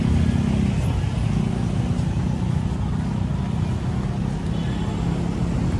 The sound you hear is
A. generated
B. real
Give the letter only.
B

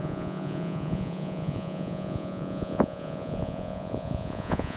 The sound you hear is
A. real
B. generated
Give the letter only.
B